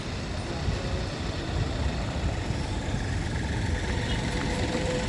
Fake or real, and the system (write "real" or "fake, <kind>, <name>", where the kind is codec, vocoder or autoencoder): fake, vocoder, BigVGAN v2